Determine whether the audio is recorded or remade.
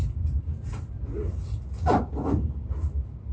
recorded